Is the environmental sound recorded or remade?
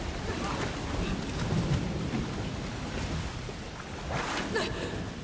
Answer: recorded